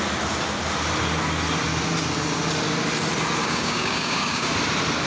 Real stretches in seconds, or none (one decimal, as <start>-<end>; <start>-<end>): 0.0-3.4; 4.5-5.1